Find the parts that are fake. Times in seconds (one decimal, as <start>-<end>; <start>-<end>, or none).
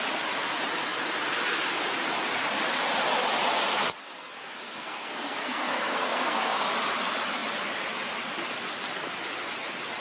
4.0-6.6